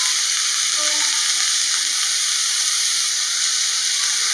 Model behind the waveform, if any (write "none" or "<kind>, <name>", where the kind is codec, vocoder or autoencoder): none